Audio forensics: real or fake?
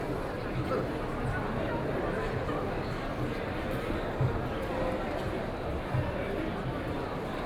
real